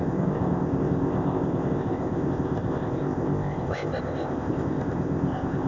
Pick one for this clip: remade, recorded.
remade